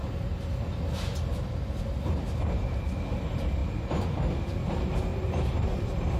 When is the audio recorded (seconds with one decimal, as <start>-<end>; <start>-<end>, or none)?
0.0-5.1